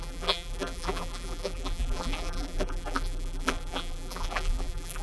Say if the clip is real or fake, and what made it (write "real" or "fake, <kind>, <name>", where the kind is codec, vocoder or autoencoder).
fake, vocoder, BigVGAN v2